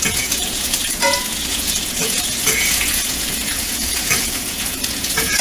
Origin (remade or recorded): remade